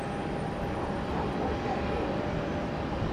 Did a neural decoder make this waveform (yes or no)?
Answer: no